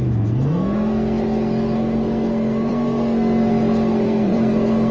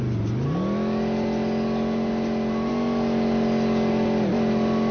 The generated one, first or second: first